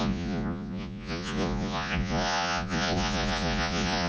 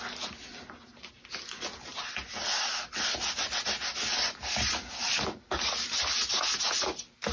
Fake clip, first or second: first